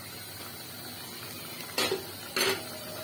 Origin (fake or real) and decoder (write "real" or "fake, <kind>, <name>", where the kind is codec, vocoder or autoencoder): real